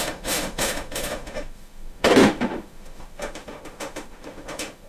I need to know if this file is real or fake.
fake